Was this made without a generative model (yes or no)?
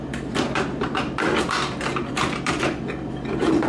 no